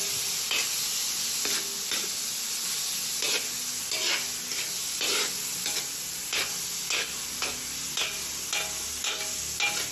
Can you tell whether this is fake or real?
real